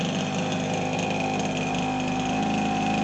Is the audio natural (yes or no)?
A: yes